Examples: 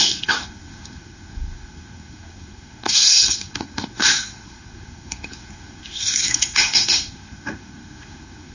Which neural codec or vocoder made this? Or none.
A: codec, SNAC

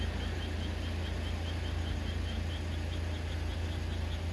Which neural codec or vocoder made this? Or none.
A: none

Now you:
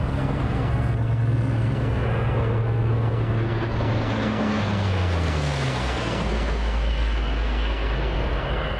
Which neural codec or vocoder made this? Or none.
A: codec, SNAC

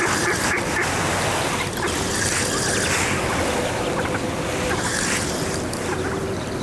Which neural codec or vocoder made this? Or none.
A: none